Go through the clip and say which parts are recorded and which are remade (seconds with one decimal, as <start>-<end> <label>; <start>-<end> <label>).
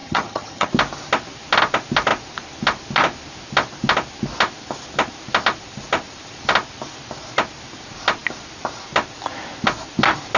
0.0-0.7 remade; 0.7-10.4 recorded